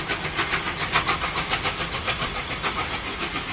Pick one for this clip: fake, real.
real